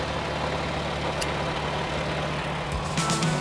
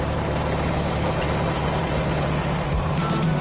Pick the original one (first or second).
first